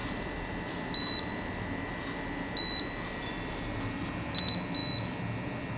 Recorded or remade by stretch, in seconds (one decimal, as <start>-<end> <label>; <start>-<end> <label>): 0.0-5.8 recorded